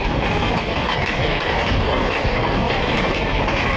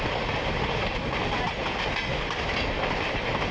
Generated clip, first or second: first